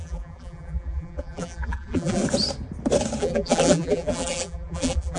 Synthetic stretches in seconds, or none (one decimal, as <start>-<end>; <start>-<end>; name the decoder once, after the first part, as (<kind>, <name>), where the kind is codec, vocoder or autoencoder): 0.0-2.2 (vocoder, BigVGAN v2); 3.2-5.2